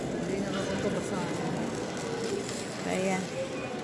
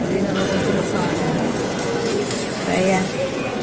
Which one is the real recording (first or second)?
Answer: first